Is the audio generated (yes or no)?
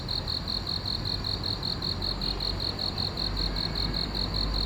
no